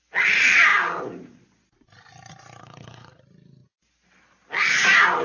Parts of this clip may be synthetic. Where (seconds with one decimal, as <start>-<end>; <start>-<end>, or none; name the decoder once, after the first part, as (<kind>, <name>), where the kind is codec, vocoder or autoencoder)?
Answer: 2.6-3.2 (codec, HILCodec)